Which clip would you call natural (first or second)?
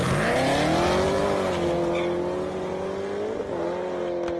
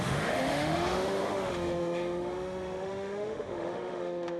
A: first